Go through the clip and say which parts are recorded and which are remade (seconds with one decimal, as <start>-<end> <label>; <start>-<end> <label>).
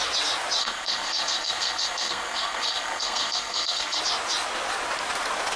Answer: 0.0-0.6 recorded; 0.6-4.0 remade; 4.0-5.6 recorded